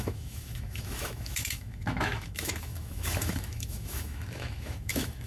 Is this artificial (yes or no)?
yes